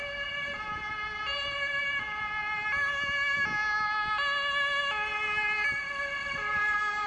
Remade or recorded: recorded